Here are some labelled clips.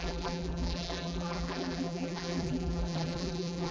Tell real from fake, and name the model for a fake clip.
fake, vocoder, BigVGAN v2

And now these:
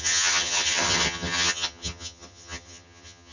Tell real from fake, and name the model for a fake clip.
fake, vocoder, HiFi-GAN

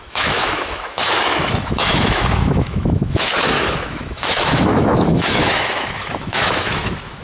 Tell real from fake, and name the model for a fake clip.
fake, autoencoder, DAC-VAE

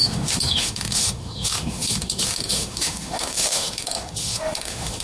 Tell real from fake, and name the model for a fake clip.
fake, autoencoder, DAC-VAE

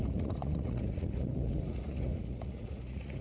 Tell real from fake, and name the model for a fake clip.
fake, vocoder, Vocos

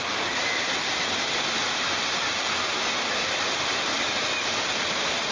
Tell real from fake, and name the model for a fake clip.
real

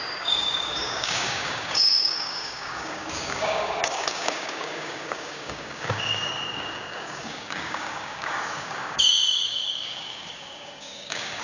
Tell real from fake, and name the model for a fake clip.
fake, codec, DAC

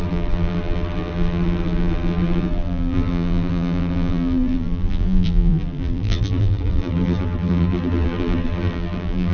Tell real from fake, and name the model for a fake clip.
fake, vocoder, BigVGAN v2